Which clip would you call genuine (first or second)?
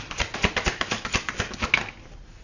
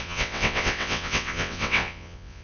first